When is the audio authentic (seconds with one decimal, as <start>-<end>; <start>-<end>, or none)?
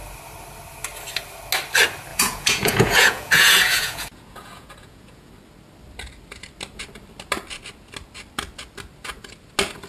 0.0-2.1; 5.3-9.9